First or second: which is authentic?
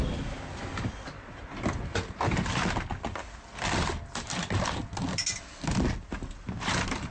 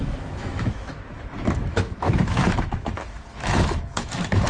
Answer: first